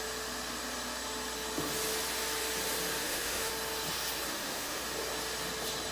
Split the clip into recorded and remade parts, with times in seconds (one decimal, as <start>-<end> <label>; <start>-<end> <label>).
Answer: 0.0-3.0 recorded; 3.0-3.5 remade; 3.5-4.3 recorded; 4.3-4.8 remade; 4.8-5.9 recorded